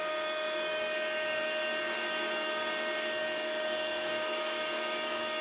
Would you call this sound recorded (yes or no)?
no